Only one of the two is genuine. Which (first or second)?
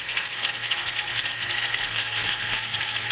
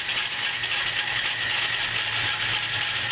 second